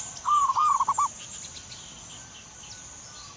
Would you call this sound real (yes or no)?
yes